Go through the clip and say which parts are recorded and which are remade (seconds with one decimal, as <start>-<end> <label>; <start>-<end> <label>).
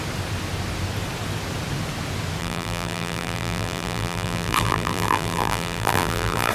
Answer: 0.0-2.4 recorded; 2.4-6.5 remade